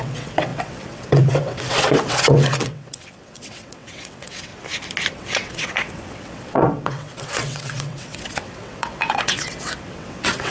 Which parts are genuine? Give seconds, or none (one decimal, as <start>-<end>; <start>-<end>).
4.5-5.1